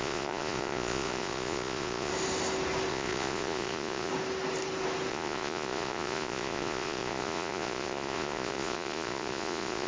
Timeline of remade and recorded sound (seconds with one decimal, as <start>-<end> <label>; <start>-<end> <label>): 0.0-2.1 remade; 2.1-2.9 recorded; 2.9-4.1 remade; 4.1-5.1 recorded; 5.1-9.9 remade